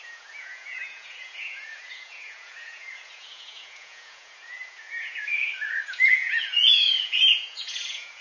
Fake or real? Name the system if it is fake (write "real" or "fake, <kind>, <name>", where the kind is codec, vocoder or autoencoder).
fake, vocoder, Vocos